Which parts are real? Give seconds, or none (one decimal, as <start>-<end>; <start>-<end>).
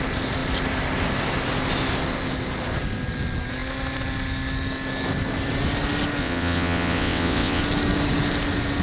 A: 0.0-6.2; 7.6-8.8